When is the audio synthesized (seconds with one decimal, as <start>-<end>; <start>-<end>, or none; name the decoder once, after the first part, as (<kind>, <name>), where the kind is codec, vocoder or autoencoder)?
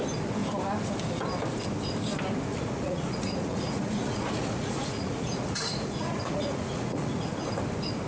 2.5-7.3 (vocoder, Vocos)